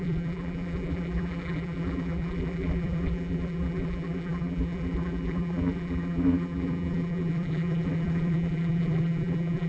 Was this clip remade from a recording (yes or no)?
yes